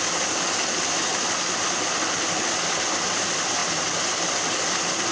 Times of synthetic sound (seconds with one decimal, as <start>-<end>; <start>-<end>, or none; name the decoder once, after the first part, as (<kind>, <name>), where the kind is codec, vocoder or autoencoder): none